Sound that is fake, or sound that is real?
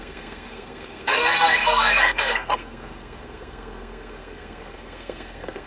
fake